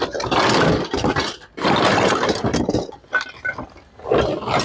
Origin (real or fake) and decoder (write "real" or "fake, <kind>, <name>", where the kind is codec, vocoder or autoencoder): real